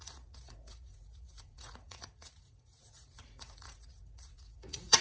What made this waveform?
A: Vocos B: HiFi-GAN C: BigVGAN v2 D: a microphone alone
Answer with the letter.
A